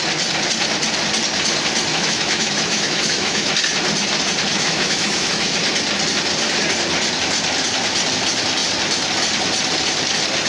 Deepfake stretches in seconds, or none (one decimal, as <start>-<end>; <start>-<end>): 1.9-3.5; 4.5-5.6